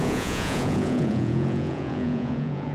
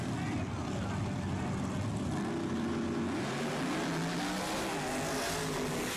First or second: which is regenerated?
first